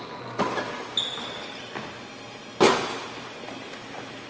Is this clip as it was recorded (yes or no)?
yes